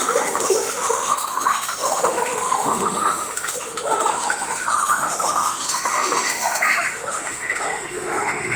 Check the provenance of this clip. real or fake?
fake